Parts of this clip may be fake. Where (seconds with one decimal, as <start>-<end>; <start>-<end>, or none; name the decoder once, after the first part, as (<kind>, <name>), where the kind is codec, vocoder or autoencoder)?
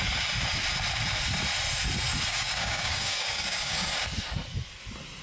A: 2.3-3.9 (codec, DAC)